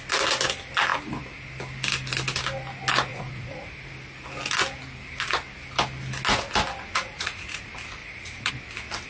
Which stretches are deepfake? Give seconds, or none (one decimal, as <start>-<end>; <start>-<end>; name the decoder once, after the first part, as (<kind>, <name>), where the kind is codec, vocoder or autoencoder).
3.1-3.9 (vocoder, Vocos); 6.9-7.6; 8.0-8.5